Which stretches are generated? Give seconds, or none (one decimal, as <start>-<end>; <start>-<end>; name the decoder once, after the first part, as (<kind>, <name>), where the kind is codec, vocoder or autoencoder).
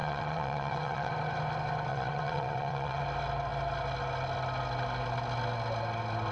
0.0-1.1 (vocoder, WaveNeXt); 1.9-3.0